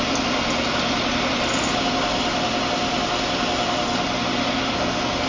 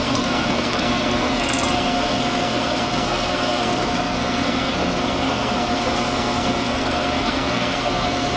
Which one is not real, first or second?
second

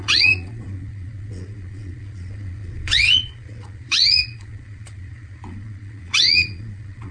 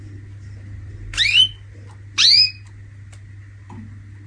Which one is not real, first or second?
first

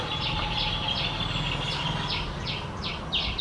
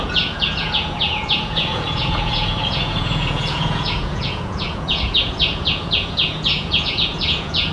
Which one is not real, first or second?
second